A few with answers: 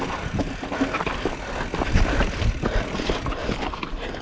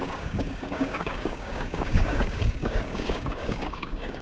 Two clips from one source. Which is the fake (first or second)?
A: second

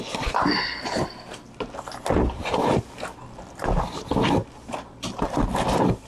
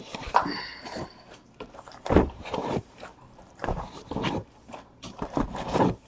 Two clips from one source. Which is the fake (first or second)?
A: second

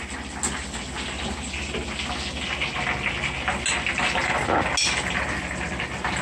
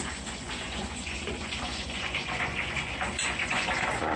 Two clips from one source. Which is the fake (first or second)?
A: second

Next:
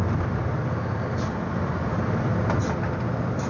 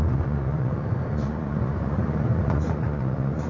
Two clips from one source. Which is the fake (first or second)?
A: second